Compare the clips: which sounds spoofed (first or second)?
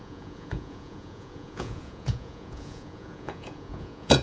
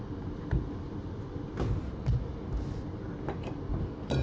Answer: first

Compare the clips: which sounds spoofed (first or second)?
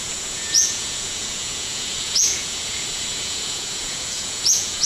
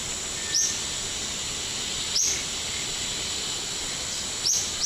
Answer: first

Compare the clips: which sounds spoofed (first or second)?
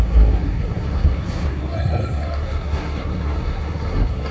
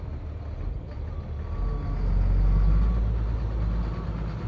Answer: first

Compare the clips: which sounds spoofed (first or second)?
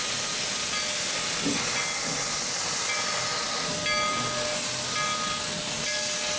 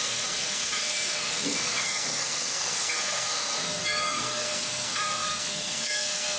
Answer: second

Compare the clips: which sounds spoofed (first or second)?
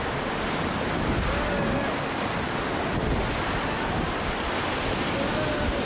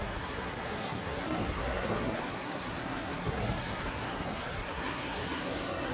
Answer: second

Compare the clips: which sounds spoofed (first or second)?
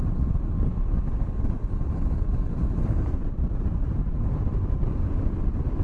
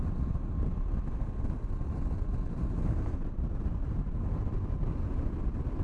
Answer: first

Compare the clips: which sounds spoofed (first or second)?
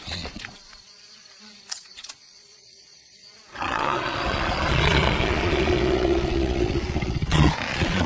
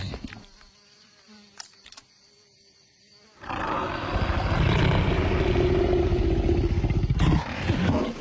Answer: first